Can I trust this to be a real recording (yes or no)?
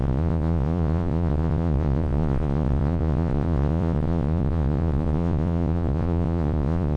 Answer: no